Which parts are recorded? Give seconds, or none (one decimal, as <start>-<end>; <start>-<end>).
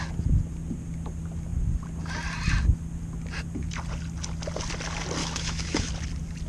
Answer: 0.0-5.2; 5.9-6.5